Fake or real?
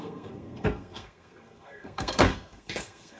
fake